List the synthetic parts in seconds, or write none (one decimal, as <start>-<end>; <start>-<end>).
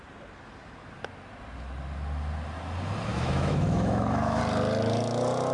3.1-4.4